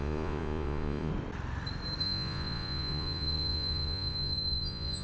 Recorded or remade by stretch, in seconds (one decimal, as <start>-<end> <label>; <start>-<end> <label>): 0.0-1.1 remade; 1.1-2.0 recorded; 2.0-5.0 remade